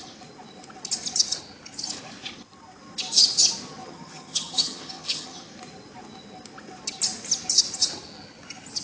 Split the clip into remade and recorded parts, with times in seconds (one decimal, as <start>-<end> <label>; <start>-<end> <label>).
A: 0.0-3.8 recorded; 3.8-5.4 remade; 5.4-8.8 recorded